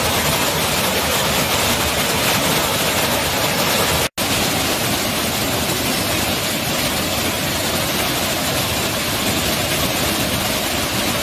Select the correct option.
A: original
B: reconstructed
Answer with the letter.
A